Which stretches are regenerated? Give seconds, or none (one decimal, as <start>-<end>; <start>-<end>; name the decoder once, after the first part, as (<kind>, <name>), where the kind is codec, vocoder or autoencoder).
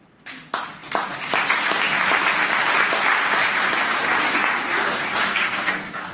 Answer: 5.3-6.1 (codec, SNAC)